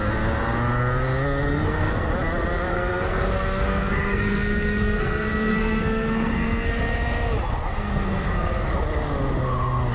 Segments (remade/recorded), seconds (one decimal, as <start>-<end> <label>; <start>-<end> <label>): 0.0-1.5 recorded; 1.5-2.1 remade; 2.1-2.7 recorded; 2.7-6.7 remade; 6.7-7.7 recorded; 7.7-8.7 remade; 8.7-9.9 recorded